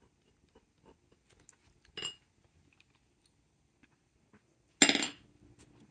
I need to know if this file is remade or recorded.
recorded